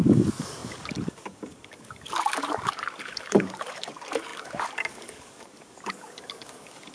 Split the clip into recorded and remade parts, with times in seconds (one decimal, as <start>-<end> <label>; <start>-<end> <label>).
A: 0.0-6.9 remade